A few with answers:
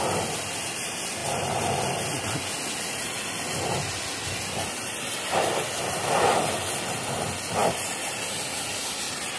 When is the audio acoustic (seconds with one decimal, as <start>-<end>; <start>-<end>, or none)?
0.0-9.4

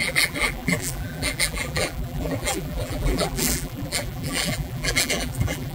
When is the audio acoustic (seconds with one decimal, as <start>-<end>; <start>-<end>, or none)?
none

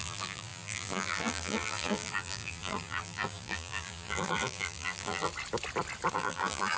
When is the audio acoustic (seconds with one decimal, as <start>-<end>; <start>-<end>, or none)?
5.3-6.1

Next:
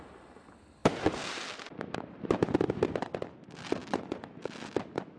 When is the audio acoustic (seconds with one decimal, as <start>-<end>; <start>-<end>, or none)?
0.0-5.2